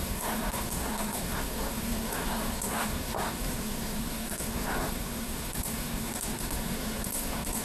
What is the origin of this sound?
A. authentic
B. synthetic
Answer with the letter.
B